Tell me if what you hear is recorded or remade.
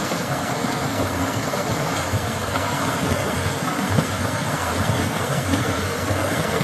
remade